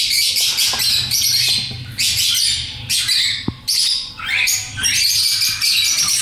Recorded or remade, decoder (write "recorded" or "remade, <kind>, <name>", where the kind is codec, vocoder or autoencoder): recorded